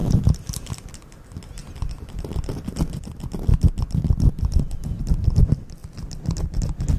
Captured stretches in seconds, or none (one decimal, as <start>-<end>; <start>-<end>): 0.9-7.0